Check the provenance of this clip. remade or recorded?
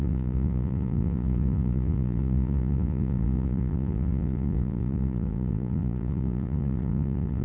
remade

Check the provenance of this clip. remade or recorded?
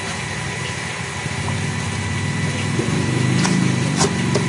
recorded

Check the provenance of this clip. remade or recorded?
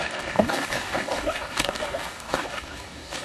remade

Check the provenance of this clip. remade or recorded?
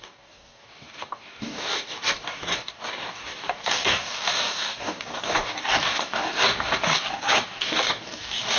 remade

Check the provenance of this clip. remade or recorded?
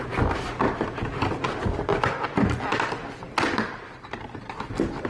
recorded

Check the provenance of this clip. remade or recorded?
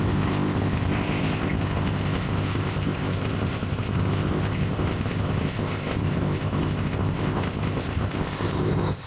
remade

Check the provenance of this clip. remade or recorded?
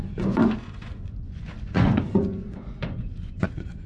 remade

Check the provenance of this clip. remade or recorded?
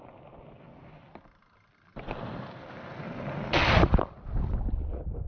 recorded